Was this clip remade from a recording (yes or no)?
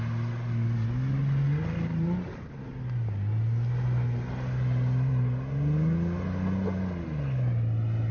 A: no